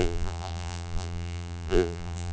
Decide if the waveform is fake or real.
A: fake